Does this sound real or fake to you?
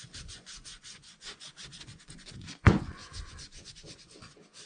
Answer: fake